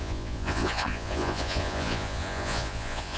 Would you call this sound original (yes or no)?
no